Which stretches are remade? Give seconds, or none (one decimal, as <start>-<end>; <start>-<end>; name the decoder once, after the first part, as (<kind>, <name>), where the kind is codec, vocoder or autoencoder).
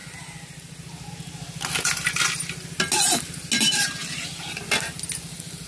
none